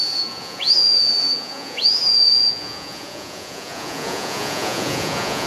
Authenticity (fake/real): fake